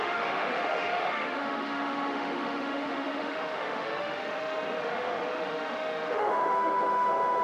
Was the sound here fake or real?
fake